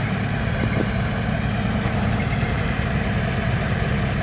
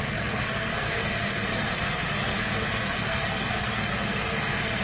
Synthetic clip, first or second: second